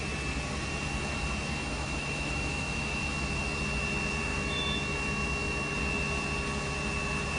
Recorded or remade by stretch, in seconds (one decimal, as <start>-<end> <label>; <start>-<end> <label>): 0.0-1.6 recorded; 1.6-3.4 remade; 3.4-4.3 recorded; 4.3-5.7 remade; 5.7-7.4 recorded